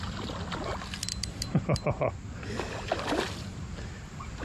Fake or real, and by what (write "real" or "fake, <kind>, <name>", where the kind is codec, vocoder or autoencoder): real